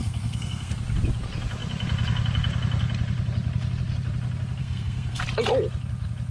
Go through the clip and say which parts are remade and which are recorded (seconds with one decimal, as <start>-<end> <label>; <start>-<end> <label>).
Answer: 0.0-0.7 remade; 0.7-4.6 recorded; 4.6-5.2 remade; 5.2-6.3 recorded